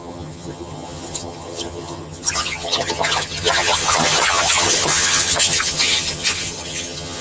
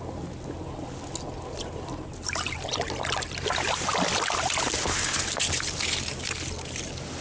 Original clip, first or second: second